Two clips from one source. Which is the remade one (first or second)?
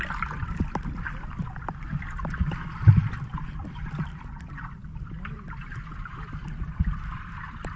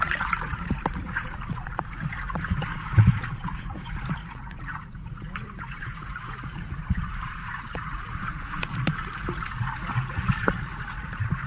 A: second